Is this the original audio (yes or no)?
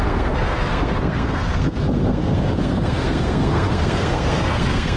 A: no